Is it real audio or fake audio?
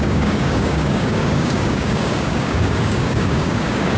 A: fake